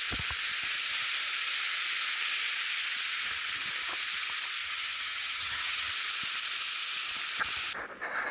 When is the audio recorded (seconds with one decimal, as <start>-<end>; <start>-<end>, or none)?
0.0-4.6; 5.9-8.3